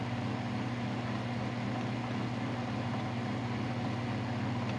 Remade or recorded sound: recorded